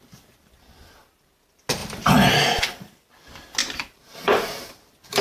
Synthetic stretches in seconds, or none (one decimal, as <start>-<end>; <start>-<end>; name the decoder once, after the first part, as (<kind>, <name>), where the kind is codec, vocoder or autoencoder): 3.6-4.7 (vocoder, BigVGAN v2)